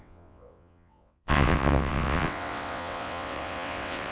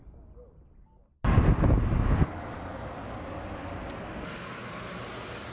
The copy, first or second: first